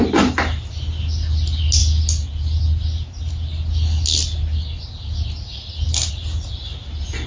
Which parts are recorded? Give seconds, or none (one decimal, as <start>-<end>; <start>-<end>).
0.0-7.3